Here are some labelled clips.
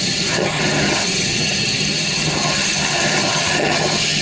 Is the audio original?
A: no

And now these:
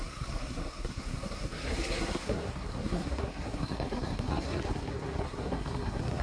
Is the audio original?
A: no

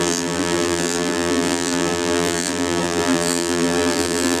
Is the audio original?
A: no